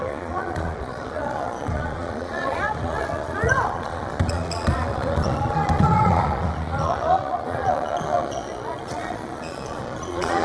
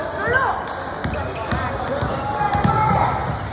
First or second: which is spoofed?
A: first